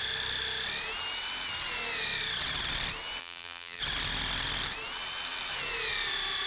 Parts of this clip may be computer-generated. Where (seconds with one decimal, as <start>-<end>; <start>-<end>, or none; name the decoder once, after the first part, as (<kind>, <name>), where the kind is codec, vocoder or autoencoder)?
3.2-3.8 (vocoder, BigVGAN v2)

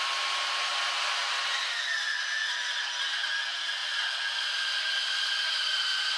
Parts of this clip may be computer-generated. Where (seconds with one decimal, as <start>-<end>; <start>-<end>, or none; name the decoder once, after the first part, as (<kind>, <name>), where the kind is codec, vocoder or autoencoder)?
none

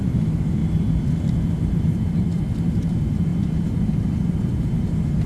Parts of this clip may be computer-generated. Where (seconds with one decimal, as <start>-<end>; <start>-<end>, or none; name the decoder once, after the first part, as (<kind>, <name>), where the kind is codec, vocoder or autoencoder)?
0.0-0.6 (vocoder, BigVGAN v2); 1.6-5.3

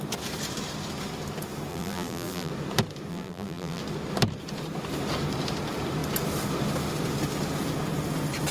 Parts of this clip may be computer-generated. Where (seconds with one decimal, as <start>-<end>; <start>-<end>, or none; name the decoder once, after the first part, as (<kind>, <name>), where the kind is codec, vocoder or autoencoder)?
1.7-2.5 (vocoder, BigVGAN v2); 3.1-3.8

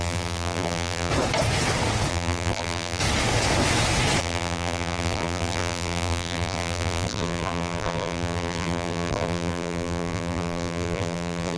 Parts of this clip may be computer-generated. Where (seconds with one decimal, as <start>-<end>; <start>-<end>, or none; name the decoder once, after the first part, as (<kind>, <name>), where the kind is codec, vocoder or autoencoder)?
0.0-1.1 (vocoder, BigVGAN v2); 2.1-3.0; 4.2-11.6

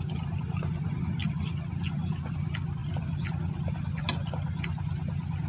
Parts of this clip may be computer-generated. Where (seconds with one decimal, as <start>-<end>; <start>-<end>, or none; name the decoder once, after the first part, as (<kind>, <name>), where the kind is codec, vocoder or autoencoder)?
none

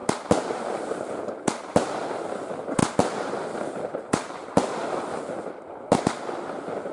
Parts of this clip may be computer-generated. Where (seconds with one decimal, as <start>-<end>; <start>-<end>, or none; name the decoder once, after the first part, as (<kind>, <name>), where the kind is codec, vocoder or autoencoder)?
0.0-2.1 (vocoder, BigVGAN v2); 2.8-5.2